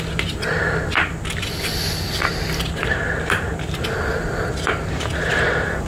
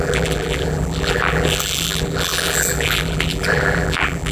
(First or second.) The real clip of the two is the first